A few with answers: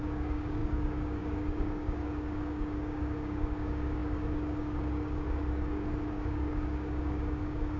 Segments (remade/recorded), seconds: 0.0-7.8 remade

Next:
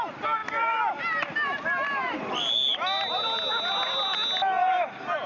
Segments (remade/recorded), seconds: 0.0-5.3 recorded

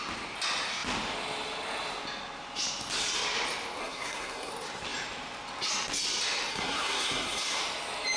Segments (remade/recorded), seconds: 0.0-3.8 recorded; 3.8-4.5 remade; 4.5-6.5 recorded; 6.5-7.6 remade; 7.6-8.2 recorded

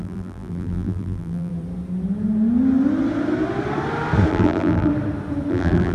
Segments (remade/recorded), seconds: 0.0-1.5 remade; 1.5-4.3 recorded; 4.3-4.9 remade; 4.9-5.5 recorded; 5.5-5.9 remade

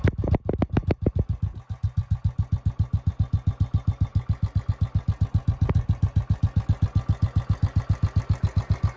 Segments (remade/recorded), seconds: 0.0-9.0 recorded

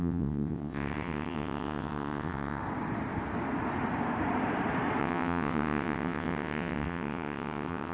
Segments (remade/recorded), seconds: 0.0-2.6 remade; 2.6-5.0 recorded; 5.0-7.9 remade

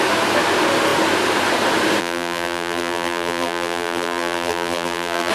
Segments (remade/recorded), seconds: 0.0-2.0 recorded; 2.0-5.3 remade